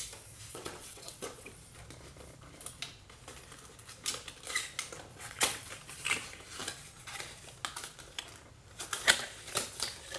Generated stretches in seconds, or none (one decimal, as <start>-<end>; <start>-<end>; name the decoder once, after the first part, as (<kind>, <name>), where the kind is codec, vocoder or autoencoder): 0.5-1.5 (vocoder, WaveNeXt); 5.1-5.7